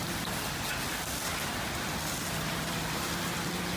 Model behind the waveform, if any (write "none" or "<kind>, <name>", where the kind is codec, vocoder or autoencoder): none